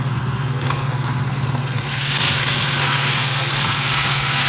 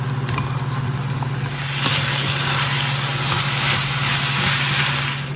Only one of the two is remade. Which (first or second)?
first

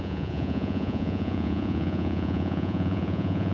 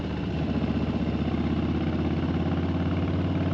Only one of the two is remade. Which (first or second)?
first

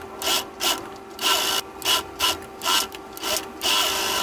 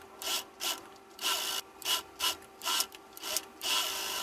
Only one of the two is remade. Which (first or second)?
second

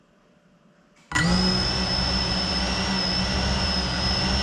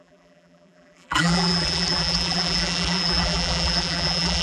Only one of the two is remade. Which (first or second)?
second